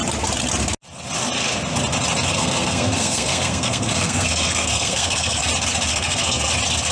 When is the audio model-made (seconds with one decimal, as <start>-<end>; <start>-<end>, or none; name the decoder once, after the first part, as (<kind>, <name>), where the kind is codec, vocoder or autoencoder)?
2.3-5.4 (codec, SNAC); 5.9-6.5